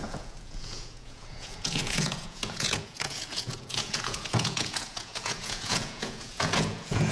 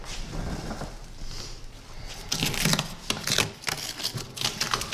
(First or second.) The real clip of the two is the second